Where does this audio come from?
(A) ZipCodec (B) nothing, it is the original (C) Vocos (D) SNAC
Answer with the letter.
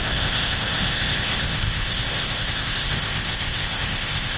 A